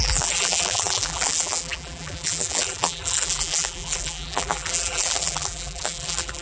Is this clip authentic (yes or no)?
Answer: no